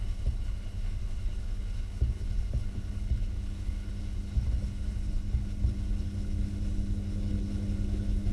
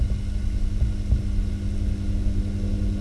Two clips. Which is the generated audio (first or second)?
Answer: first